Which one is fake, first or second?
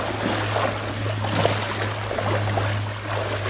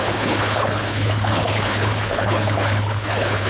second